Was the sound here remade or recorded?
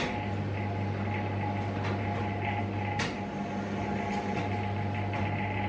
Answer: recorded